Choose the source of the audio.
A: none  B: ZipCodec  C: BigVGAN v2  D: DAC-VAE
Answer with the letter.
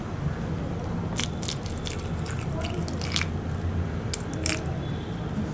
A